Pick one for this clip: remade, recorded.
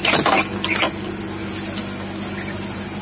recorded